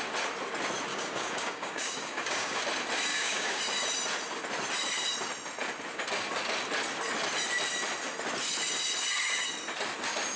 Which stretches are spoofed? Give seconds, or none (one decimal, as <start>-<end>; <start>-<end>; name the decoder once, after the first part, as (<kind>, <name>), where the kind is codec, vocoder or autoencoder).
0.9-2.6 (codec, DAC); 3.1-3.6